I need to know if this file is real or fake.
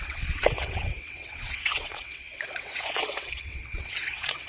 fake